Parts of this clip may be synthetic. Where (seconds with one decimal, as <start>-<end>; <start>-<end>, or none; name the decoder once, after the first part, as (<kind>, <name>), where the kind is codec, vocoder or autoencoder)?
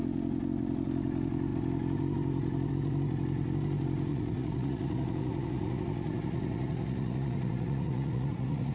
4.1-8.7 (vocoder, Vocos)